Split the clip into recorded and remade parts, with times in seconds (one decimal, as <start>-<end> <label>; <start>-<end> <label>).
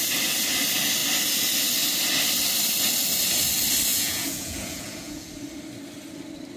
0.0-3.9 recorded; 3.9-5.3 remade; 5.3-6.6 recorded